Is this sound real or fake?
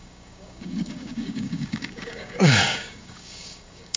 fake